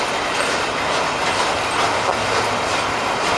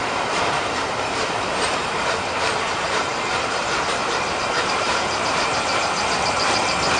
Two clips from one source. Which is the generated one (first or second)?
second